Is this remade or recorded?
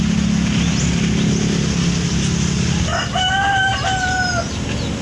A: recorded